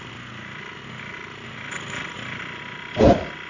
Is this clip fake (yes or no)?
no